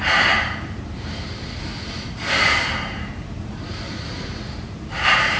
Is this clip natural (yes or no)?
no